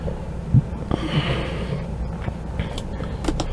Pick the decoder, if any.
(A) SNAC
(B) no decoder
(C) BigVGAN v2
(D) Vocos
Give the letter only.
B